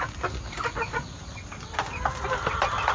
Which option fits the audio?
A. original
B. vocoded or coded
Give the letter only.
A